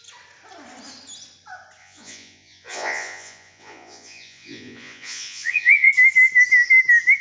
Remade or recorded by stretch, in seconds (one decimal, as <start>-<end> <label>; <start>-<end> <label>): 0.0-1.8 recorded; 1.8-5.9 remade; 5.9-7.2 recorded